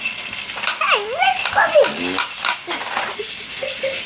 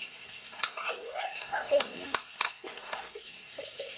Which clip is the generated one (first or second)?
second